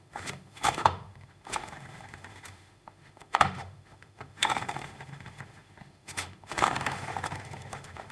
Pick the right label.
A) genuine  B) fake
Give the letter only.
B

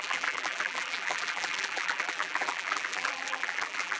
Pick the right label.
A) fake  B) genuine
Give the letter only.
A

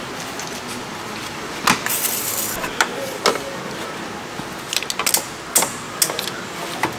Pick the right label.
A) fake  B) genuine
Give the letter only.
B